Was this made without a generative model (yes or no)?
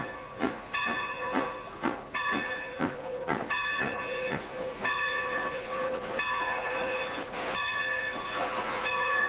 no